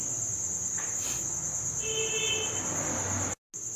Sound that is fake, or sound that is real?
real